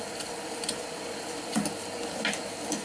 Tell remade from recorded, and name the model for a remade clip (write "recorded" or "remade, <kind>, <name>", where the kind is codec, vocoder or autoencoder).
recorded